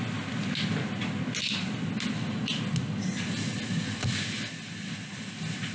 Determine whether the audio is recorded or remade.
recorded